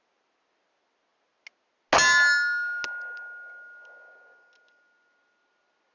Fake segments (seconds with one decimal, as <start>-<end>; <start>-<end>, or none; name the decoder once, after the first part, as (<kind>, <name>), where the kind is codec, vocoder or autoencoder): none